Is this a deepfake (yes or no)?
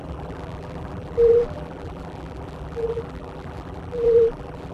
yes